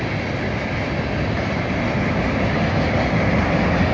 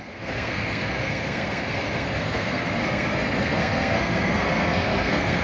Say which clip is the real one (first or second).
first